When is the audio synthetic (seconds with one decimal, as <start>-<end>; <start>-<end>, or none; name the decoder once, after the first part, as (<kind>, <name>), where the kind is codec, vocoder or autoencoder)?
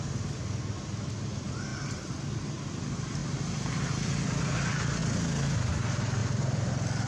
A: 1.7-2.6 (vocoder, BigVGAN v2); 6.2-7.1